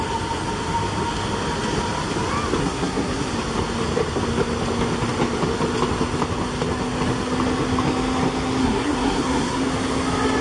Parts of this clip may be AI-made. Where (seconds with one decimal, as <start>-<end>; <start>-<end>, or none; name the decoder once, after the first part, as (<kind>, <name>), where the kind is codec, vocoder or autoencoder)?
2.6-3.3 (codec, SNAC); 8.6-9.7